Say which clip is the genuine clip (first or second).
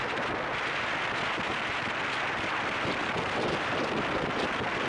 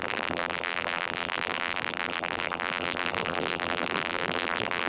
first